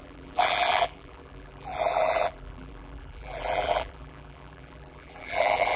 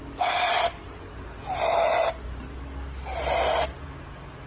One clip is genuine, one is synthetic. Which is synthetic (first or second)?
first